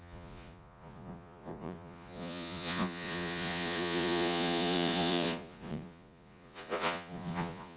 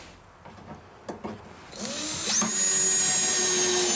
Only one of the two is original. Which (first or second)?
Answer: second